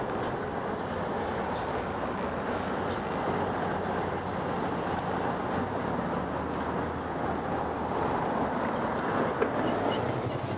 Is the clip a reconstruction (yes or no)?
no